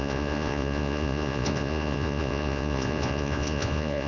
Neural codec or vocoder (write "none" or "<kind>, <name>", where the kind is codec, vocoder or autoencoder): vocoder, Vocos